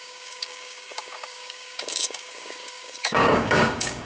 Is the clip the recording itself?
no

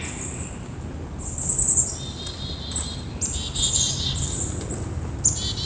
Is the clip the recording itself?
yes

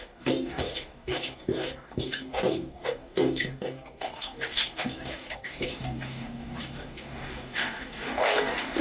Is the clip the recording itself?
no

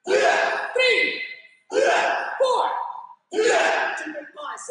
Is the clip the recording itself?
yes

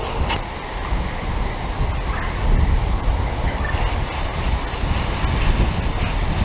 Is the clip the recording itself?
yes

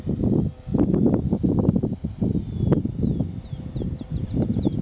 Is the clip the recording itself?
yes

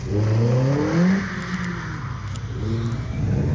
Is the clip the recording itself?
yes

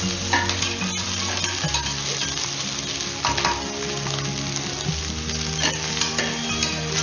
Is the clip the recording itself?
yes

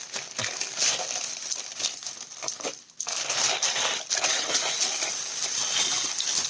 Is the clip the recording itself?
yes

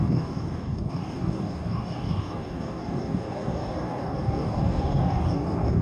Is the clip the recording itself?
no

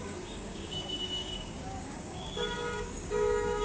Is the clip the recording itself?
no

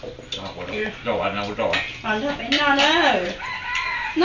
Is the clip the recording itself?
yes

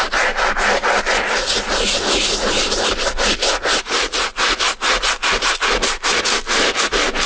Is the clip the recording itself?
yes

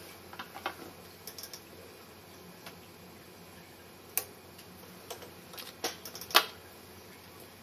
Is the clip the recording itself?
yes